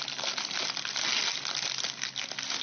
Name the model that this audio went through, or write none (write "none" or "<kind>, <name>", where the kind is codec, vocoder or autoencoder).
none